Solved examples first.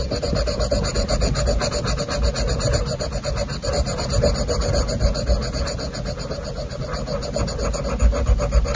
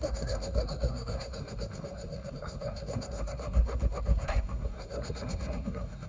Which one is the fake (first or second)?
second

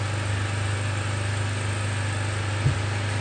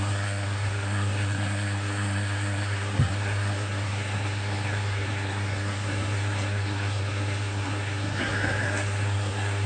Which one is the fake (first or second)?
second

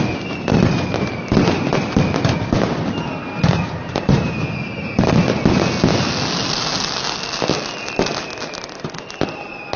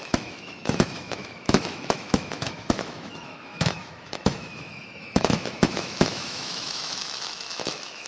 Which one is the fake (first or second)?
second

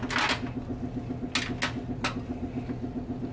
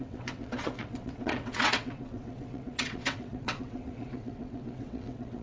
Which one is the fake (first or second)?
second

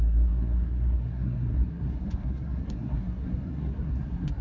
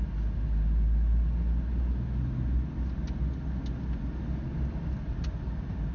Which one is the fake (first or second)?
first